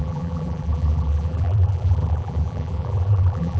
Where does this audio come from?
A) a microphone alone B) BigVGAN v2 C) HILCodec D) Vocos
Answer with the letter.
B